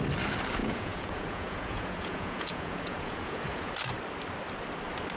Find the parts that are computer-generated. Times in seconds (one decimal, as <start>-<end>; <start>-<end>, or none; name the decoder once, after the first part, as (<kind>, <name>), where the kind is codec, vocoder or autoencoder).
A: 0.6-3.7 (vocoder, Vocos)